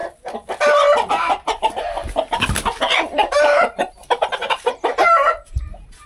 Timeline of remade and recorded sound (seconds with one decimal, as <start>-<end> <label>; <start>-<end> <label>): 0.0-1.1 recorded; 1.1-6.1 remade